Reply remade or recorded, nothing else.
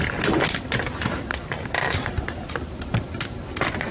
remade